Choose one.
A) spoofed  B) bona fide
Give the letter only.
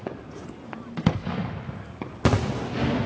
B